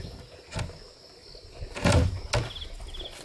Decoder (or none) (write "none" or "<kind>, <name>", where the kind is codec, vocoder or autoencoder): none